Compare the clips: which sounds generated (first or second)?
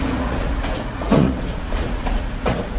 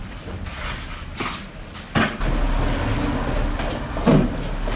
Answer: first